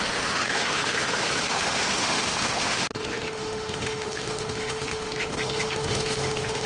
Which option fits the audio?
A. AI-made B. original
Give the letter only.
A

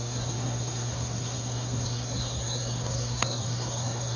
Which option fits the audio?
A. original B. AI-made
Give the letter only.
B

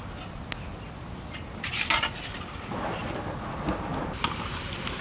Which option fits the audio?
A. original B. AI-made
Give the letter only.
A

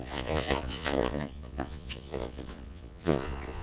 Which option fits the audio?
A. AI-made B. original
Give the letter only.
A